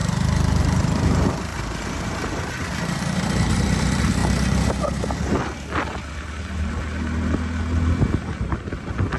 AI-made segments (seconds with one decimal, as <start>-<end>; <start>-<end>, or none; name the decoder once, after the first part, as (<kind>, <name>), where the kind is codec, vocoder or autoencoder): 0.6-1.5 (vocoder, BigVGAN v2); 2.5-4.2